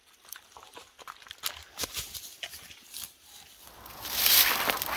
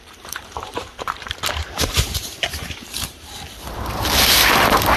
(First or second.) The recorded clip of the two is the first